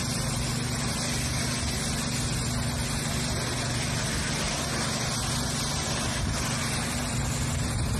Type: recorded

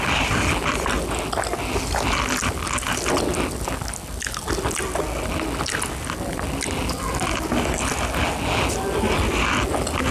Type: recorded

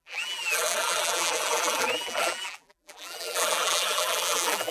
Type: remade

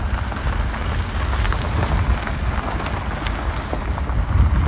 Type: recorded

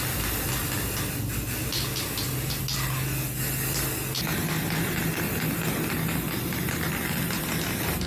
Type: recorded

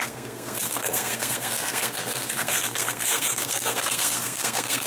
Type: remade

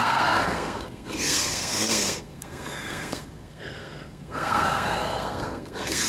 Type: remade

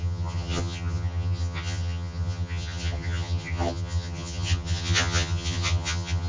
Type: remade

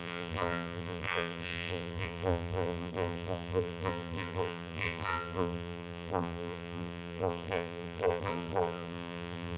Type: remade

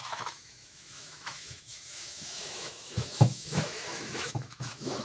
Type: remade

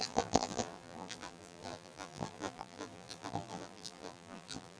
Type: remade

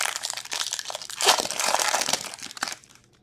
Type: remade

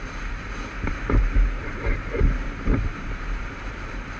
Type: remade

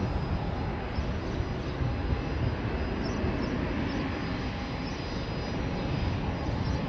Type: recorded